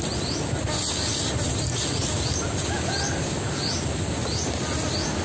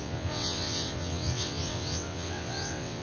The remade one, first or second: second